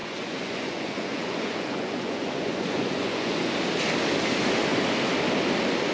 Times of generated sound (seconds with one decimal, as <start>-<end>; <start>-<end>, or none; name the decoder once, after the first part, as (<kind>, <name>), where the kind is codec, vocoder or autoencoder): 0.0-3.5 (vocoder, Vocos)